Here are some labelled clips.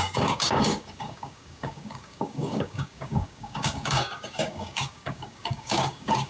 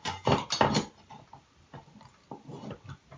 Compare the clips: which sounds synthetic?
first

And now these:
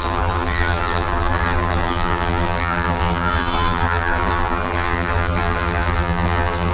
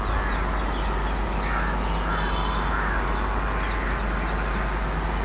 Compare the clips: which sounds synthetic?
first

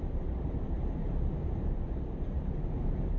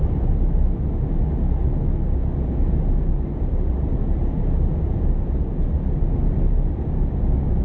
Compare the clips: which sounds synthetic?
first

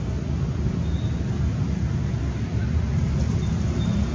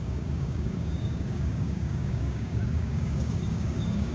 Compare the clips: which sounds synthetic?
second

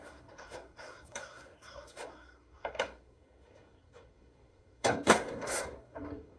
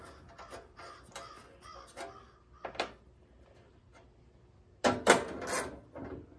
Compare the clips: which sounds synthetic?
first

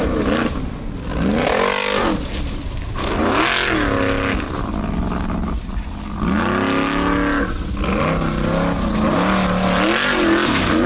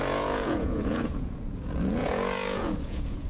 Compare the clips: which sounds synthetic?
second